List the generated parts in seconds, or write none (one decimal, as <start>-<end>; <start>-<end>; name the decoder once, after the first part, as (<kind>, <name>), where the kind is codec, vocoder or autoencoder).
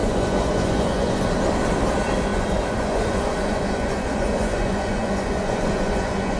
0.0-1.2 (vocoder, Vocos); 2.3-6.4